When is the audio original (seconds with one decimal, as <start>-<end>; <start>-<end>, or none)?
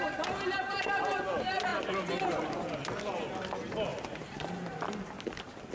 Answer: 0.0-3.9; 4.9-5.7